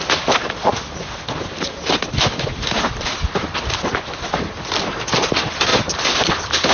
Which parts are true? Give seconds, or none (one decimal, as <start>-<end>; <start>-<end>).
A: 0.0-5.7; 6.3-6.7